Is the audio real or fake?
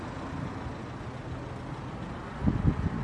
real